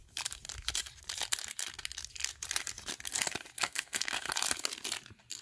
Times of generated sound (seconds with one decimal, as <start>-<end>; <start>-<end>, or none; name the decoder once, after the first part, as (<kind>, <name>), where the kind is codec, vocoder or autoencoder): 3.6-4.3 (codec, SNAC)